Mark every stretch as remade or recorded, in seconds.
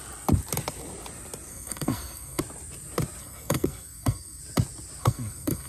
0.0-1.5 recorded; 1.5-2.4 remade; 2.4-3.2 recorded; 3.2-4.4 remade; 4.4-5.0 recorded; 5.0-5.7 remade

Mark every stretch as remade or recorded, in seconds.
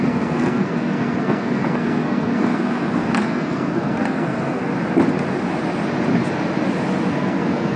0.0-4.7 remade; 4.7-7.1 recorded; 7.1-7.8 remade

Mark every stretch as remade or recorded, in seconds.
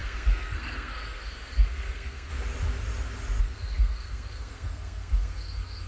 0.0-2.3 remade; 2.3-3.4 recorded; 3.4-5.9 remade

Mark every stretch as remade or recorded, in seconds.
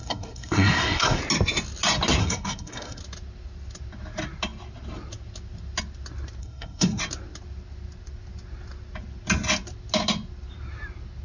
0.0-1.2 remade; 1.2-2.2 recorded; 2.2-3.0 remade; 3.0-6.4 recorded; 6.4-7.0 remade; 7.0-11.2 recorded